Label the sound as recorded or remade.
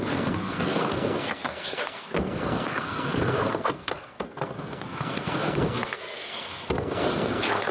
remade